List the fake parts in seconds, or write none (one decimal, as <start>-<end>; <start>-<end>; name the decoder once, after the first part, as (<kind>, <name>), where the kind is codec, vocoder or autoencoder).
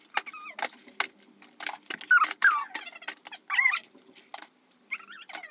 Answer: none